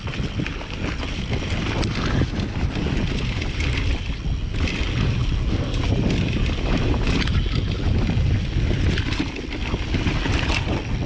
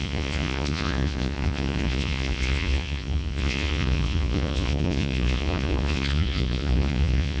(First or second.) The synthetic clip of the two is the second